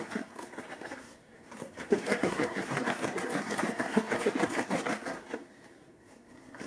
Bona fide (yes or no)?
no